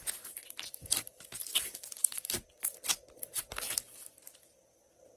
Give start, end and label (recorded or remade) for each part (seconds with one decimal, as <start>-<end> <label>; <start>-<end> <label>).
0.0-5.2 recorded